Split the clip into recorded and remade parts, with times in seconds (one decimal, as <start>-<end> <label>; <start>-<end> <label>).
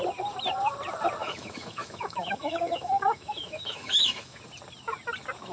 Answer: 0.0-1.2 recorded; 1.2-4.4 remade; 4.4-5.5 recorded